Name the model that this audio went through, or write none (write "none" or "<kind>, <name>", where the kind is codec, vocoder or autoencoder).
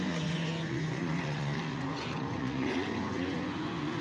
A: vocoder, Vocos